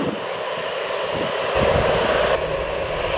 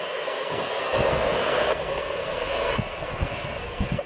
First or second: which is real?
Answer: first